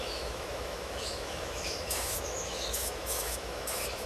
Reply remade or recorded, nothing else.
remade